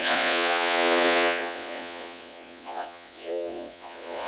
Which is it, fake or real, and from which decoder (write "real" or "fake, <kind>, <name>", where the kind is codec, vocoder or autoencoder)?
fake, vocoder, Vocos